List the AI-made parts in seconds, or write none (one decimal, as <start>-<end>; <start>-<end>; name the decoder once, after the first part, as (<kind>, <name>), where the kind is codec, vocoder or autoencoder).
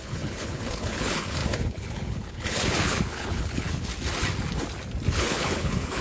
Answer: 0.0-3.9 (codec, HILCodec); 5.1-6.0